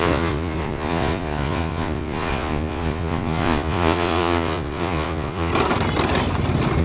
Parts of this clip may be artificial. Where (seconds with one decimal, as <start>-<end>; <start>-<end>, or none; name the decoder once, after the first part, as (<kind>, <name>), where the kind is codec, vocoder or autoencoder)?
0.0-5.5 (vocoder, Vocos)